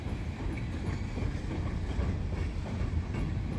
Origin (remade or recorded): recorded